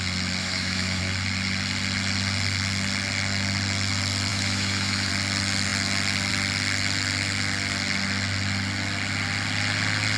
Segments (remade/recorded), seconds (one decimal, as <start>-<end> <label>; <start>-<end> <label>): 0.0-0.4 recorded; 0.4-1.0 remade; 1.0-4.3 recorded; 4.3-5.1 remade; 5.1-10.2 recorded